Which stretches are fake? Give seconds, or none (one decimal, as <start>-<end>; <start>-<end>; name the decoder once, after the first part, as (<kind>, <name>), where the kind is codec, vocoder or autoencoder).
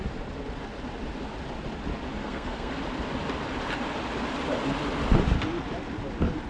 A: 2.2-2.7 (codec, SNAC)